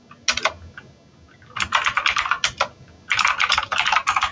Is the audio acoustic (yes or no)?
yes